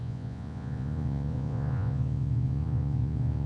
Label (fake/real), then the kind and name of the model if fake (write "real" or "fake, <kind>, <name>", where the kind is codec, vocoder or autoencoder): fake, vocoder, Vocos